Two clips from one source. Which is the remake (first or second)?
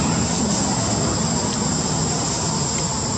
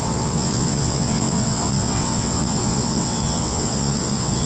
second